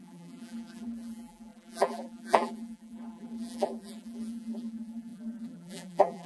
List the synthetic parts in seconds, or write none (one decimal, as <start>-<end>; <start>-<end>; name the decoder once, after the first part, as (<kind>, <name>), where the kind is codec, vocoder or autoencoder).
0.0-6.3 (vocoder, BigVGAN v2)